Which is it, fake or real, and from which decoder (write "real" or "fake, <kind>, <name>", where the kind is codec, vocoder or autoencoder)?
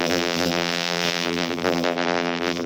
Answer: fake, vocoder, BigVGAN v2